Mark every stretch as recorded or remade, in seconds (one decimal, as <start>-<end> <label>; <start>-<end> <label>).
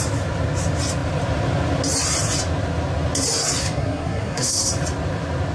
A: 0.0-3.6 recorded; 3.6-4.7 remade; 4.7-5.5 recorded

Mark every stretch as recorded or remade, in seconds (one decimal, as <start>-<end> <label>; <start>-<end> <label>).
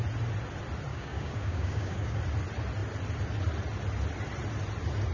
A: 0.0-0.9 recorded; 0.9-2.2 remade; 2.2-5.1 recorded